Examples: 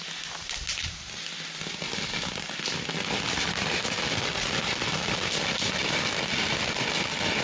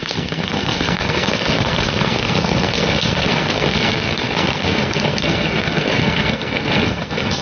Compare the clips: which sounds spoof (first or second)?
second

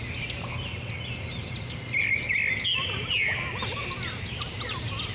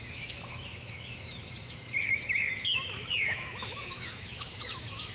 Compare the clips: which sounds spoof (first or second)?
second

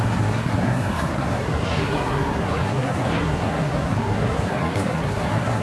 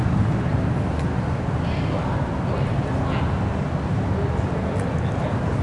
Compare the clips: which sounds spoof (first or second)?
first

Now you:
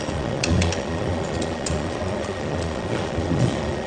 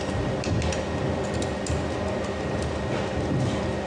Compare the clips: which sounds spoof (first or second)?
first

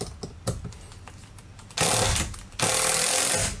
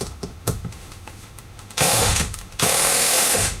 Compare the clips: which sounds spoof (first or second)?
second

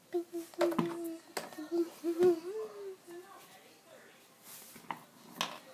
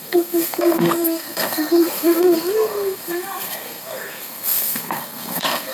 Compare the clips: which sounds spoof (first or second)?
second